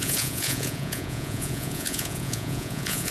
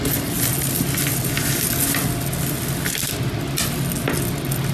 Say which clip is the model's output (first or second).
first